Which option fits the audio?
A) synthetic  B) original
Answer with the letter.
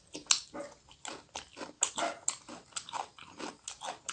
B